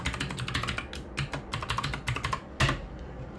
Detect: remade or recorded recorded